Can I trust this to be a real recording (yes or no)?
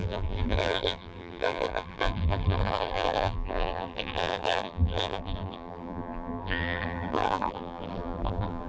no